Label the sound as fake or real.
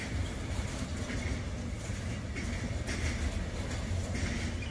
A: real